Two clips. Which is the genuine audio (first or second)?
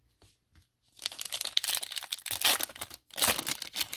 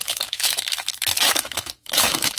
first